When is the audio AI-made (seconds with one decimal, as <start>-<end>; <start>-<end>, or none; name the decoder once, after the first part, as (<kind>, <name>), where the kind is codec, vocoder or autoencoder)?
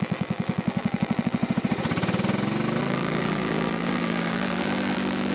0.0-1.4 (vocoder, BigVGAN v2); 2.8-5.3